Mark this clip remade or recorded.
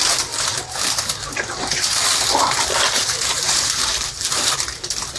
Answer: remade